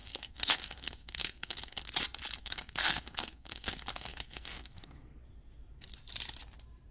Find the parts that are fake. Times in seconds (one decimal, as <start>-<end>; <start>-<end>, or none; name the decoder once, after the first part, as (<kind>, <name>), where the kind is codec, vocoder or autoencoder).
0.0-1.8 (codec, SNAC); 2.4-5.2